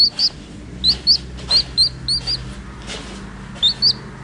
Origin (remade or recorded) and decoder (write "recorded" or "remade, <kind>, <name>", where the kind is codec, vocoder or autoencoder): recorded